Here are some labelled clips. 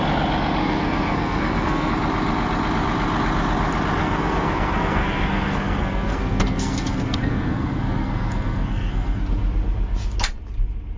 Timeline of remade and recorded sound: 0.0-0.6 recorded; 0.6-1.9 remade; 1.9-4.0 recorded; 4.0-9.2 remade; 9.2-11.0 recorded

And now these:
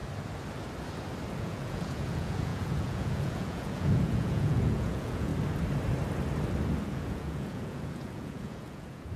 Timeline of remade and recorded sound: 0.0-1.4 recorded; 1.4-5.3 remade; 5.3-6.9 recorded; 6.9-9.2 remade

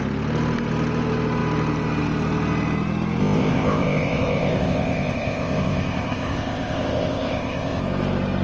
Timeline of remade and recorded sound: 0.0-3.2 recorded; 3.2-7.8 remade; 7.8-8.4 recorded